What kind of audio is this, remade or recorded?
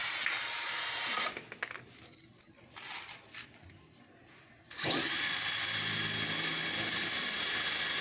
recorded